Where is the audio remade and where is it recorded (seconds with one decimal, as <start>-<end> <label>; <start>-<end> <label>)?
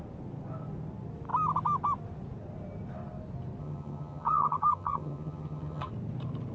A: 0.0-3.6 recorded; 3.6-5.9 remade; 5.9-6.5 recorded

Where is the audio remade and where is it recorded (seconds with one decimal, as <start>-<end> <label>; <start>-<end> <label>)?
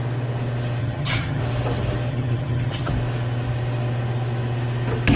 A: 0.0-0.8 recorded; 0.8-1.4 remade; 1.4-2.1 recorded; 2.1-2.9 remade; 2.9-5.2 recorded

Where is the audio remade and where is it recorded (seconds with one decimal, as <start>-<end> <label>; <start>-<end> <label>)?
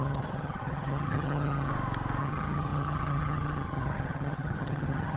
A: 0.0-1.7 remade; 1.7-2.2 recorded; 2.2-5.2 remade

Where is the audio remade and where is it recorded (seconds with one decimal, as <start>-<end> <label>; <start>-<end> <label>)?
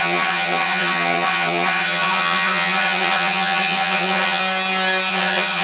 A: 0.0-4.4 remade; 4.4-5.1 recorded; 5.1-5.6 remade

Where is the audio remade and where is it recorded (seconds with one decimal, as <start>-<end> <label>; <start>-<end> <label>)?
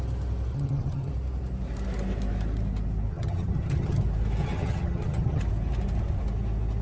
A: 0.0-0.5 recorded; 0.5-1.1 remade; 1.1-3.1 recorded; 3.1-4.0 remade; 4.0-4.4 recorded; 4.4-5.4 remade; 5.4-6.8 recorded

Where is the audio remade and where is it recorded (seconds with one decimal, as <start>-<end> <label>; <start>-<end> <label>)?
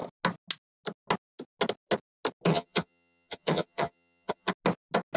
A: 0.0-2.5 recorded; 2.5-4.5 remade; 4.5-5.2 recorded